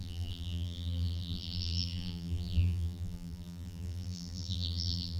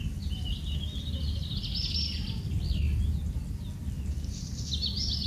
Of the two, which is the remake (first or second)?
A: first